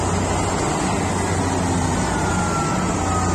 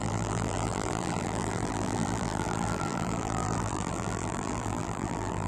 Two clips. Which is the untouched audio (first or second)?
first